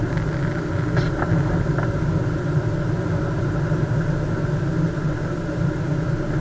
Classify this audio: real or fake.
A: real